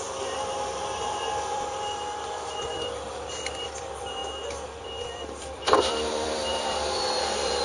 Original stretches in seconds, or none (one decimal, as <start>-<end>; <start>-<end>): 4.2-4.8